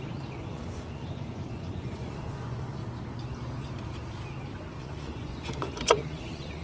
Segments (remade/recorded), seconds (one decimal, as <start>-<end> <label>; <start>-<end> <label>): 0.0-2.8 remade; 2.8-4.8 recorded; 4.8-6.6 remade